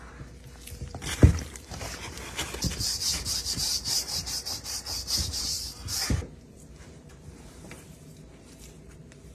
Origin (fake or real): fake